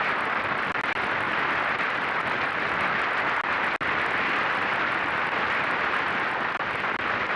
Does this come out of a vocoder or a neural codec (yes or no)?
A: no